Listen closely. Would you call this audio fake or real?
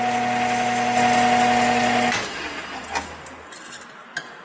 real